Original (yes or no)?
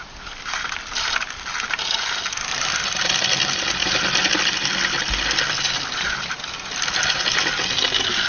yes